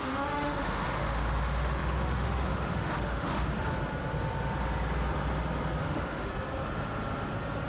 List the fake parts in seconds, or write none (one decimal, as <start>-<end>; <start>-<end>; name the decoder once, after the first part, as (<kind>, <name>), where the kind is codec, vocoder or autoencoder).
0.0-3.7 (autoencoder, DAC-VAE); 5.8-6.3